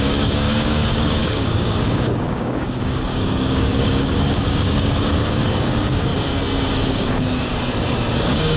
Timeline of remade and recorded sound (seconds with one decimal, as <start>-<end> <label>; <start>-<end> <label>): 0.0-6.1 remade; 6.1-6.9 recorded; 6.9-7.5 remade; 7.5-8.1 recorded; 8.1-8.6 remade